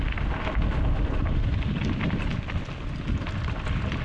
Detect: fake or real real